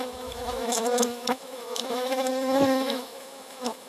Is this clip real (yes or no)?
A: no